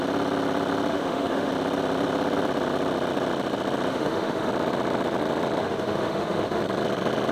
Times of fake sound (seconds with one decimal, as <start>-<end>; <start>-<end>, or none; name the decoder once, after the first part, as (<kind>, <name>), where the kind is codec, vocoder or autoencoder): 0.9-1.5 (autoencoder, DAC-VAE); 3.9-4.5; 5.6-6.6